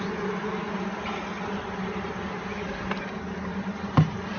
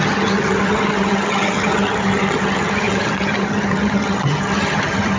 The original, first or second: first